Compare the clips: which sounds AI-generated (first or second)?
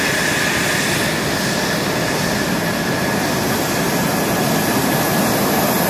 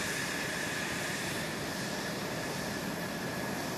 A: second